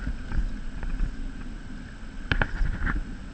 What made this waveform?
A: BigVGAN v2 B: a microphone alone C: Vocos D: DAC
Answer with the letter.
B